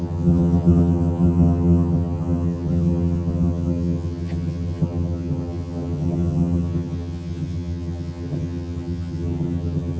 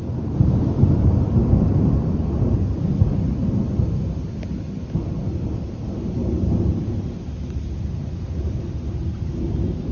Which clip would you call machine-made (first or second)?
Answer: first